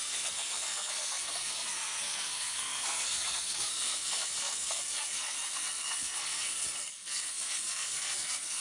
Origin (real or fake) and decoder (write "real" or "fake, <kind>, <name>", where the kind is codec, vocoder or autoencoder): fake, codec, SNAC